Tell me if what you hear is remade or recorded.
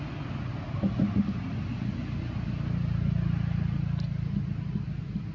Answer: recorded